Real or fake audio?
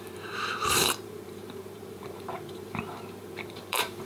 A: fake